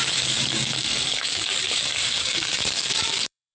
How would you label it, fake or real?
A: fake